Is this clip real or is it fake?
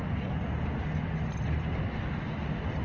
fake